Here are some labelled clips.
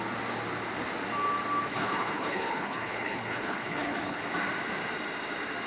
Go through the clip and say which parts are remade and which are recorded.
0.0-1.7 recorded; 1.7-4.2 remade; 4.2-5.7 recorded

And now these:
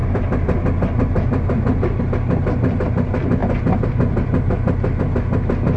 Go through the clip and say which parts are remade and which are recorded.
0.0-2.0 remade; 2.0-3.4 recorded; 3.4-5.0 remade; 5.0-5.8 recorded

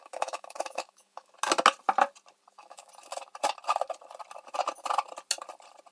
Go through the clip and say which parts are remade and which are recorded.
0.0-1.3 remade; 1.3-2.5 recorded; 2.5-2.9 remade; 2.9-5.9 recorded

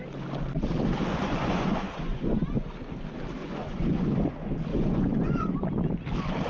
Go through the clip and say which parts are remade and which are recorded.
0.0-1.1 recorded; 1.1-2.5 remade; 2.5-3.4 recorded; 3.4-4.2 remade; 4.2-4.7 recorded; 4.7-5.7 remade; 5.7-6.5 recorded

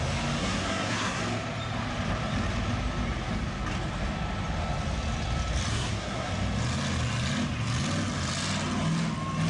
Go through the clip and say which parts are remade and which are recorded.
0.0-0.4 recorded; 0.4-1.2 remade; 1.2-5.7 recorded; 5.7-6.3 remade; 6.3-9.5 recorded

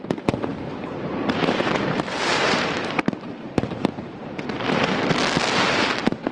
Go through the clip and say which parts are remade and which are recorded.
0.0-0.5 recorded; 0.5-4.3 remade; 4.3-6.3 recorded

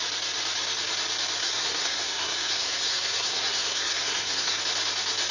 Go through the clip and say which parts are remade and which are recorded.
0.0-1.4 recorded; 1.4-4.6 remade; 4.6-5.3 recorded

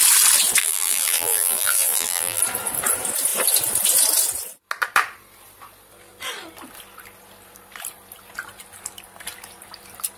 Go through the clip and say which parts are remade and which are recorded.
0.0-0.6 recorded; 0.6-2.4 remade; 2.4-10.2 recorded